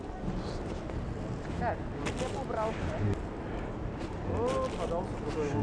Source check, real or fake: real